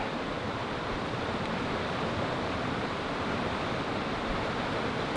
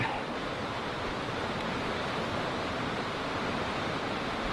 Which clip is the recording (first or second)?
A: second